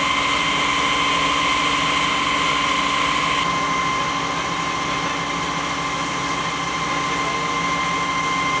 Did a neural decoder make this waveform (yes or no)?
no